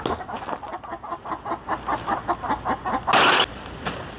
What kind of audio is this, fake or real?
real